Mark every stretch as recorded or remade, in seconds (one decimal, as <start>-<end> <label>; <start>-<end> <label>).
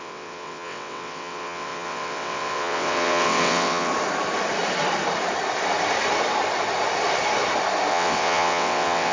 0.0-3.9 remade; 3.9-7.9 recorded; 7.9-9.1 remade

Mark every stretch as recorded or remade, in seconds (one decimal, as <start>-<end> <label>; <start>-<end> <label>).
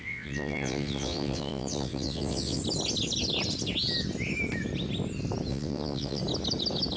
0.0-2.6 remade; 2.6-5.5 recorded; 5.5-6.2 remade; 6.2-7.0 recorded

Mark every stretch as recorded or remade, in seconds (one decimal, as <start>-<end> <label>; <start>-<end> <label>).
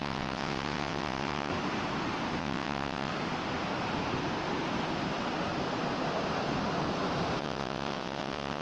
0.0-1.5 remade; 1.5-2.4 recorded; 2.4-3.1 remade; 3.1-7.4 recorded; 7.4-8.6 remade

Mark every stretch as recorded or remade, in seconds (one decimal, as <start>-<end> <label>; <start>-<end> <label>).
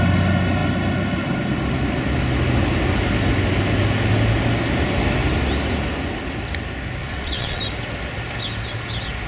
0.0-7.0 recorded; 7.0-7.6 remade; 7.6-9.3 recorded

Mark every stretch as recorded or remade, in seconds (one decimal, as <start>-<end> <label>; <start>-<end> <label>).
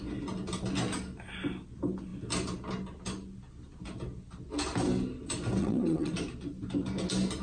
0.0-5.6 recorded; 5.6-6.1 remade; 6.1-7.4 recorded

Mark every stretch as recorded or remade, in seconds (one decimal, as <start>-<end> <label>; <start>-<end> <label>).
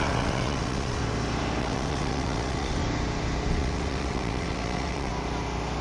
0.0-1.0 remade; 1.0-1.6 recorded; 1.6-2.8 remade; 2.8-3.5 recorded; 3.5-5.1 remade; 5.1-5.8 recorded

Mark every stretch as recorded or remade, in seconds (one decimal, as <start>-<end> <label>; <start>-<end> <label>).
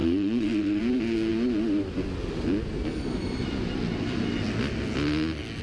0.0-0.8 remade; 0.8-5.6 recorded